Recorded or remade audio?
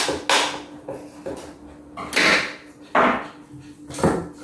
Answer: recorded